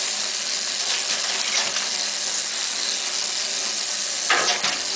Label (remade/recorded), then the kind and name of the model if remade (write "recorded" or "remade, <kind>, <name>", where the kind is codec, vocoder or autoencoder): recorded